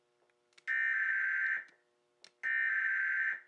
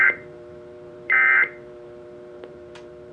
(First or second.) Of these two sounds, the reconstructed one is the second